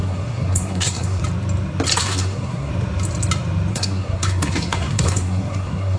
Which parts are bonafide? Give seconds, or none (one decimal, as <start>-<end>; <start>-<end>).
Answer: 1.2-2.0; 2.7-3.7

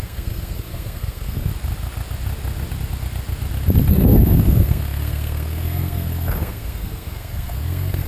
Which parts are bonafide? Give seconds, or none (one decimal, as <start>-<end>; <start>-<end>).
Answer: 1.5-3.9

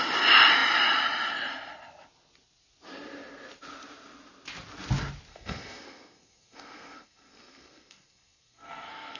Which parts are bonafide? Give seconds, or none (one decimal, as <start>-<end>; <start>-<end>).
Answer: 0.0-5.3

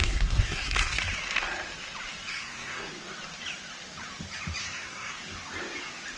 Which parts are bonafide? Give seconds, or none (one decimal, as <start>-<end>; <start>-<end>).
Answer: 1.0-2.3; 2.9-4.6; 5.2-6.2